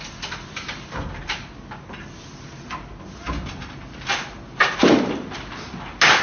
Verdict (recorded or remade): recorded